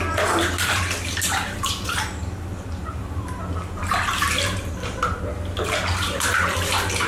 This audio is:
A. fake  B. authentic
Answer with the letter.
A